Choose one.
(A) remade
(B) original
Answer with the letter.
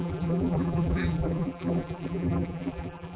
A